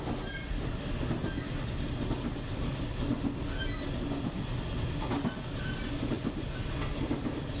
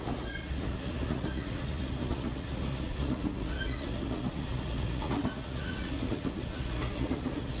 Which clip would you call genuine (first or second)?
first